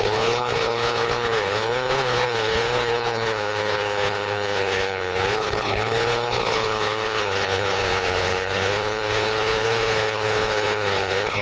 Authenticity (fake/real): fake